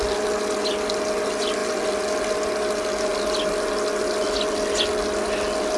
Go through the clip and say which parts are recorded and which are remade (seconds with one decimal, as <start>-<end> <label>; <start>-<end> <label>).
0.0-5.8 recorded